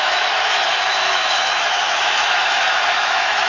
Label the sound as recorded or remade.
remade